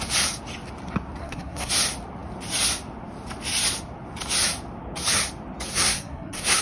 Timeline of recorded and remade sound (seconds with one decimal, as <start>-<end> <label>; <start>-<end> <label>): 0.0-1.2 recorded; 1.2-1.7 remade; 1.7-5.7 recorded; 5.7-6.6 remade